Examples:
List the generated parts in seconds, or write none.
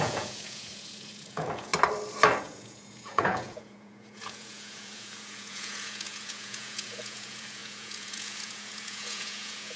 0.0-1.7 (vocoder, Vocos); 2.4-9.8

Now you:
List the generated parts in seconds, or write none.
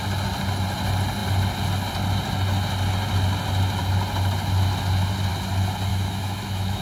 5.9-6.8 (autoencoder, DAC-VAE)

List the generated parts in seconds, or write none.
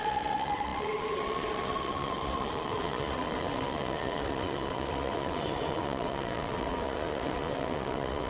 0.0-8.3 (vocoder, WaveNeXt)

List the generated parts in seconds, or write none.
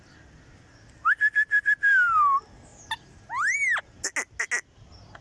none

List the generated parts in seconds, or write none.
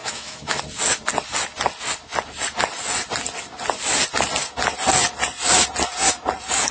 0.0-0.6 (autoencoder, DAC-VAE)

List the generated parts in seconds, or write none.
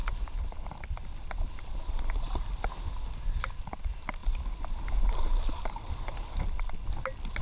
none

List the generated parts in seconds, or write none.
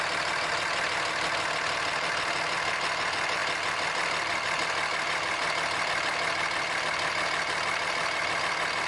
none